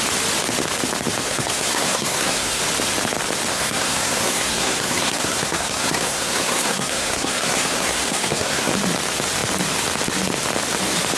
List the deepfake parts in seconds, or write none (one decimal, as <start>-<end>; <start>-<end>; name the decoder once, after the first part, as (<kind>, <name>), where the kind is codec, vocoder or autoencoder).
1.2-2.6 (codec, SNAC); 3.5-8.7